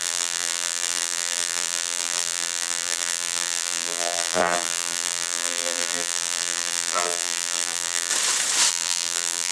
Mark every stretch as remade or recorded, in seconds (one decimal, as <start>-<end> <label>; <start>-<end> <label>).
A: 0.0-8.1 remade; 8.1-8.7 recorded; 8.7-9.5 remade